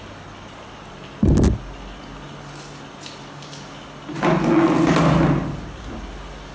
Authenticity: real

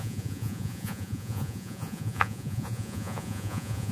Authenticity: fake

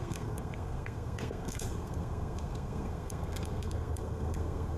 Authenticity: fake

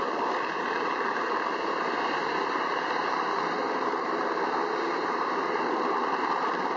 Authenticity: fake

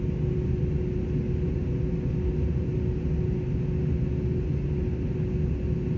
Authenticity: real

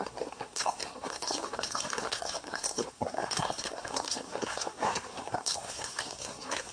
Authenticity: fake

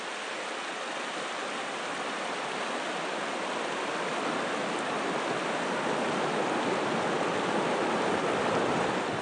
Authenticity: real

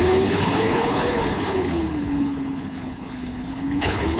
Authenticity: fake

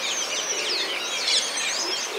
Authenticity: real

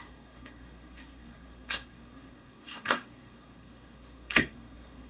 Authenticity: fake